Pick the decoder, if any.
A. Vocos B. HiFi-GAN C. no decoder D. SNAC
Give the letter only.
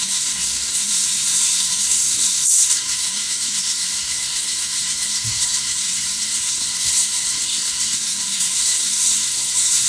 D